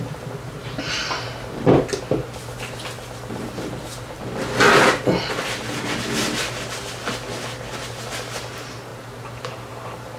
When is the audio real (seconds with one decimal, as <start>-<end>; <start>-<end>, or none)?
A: 0.0-8.9